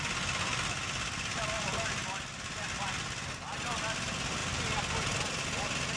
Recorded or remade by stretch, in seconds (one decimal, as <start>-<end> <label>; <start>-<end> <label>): 0.0-6.0 recorded